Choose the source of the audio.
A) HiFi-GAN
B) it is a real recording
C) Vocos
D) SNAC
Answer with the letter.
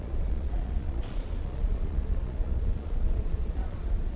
C